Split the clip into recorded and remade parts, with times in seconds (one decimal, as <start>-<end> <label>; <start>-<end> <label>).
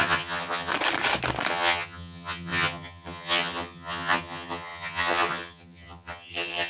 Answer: 0.0-0.7 remade; 0.7-1.5 recorded; 1.5-6.7 remade